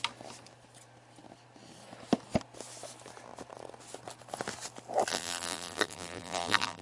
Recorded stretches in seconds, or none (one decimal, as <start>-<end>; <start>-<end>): 0.0-5.1